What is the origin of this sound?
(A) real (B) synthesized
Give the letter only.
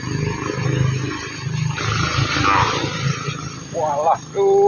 A